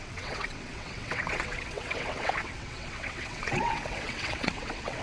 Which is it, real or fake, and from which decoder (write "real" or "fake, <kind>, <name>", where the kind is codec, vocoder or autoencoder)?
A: fake, vocoder, WaveNeXt